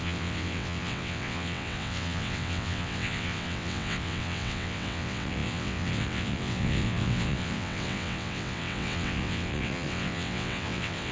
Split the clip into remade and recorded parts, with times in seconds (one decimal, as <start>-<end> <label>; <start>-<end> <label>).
0.0-11.1 remade